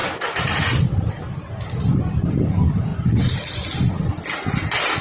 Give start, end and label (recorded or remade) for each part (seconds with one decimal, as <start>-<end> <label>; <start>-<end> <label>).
0.0-5.0 recorded